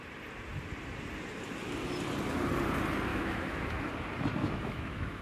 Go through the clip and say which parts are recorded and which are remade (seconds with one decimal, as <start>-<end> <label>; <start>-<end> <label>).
0.0-3.1 recorded; 3.1-3.9 remade; 3.9-4.4 recorded; 4.4-5.2 remade